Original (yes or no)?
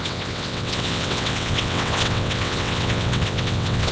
no